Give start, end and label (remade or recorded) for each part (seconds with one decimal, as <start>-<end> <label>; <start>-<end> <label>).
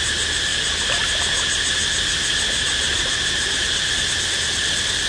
0.0-5.1 recorded